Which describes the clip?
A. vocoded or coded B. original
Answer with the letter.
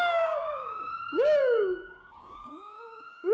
A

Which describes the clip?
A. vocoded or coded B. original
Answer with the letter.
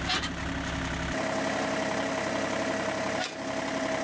B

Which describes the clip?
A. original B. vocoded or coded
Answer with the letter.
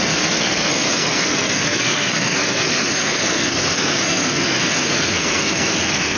B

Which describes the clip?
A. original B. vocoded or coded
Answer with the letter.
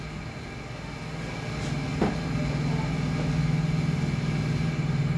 A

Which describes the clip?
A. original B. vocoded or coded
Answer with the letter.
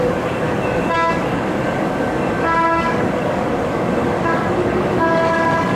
B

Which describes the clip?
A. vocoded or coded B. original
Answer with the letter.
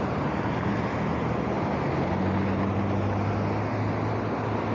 B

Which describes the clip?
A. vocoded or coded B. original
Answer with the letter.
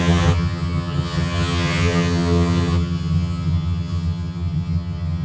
A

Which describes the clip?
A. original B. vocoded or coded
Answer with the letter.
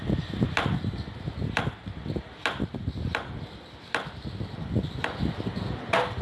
A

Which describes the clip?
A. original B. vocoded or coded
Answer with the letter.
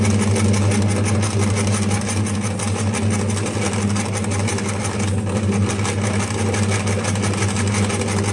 A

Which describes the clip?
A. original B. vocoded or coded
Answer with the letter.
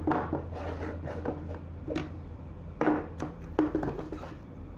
A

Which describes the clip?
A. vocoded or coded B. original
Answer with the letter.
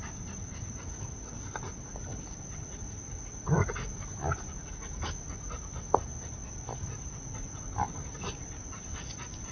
B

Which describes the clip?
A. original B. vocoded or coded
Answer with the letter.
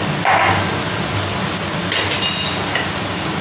A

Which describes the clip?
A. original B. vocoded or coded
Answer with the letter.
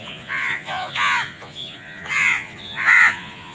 B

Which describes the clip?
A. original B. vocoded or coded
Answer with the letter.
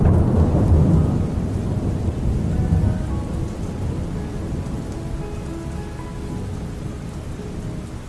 A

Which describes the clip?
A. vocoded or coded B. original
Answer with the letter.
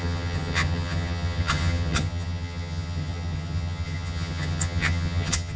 A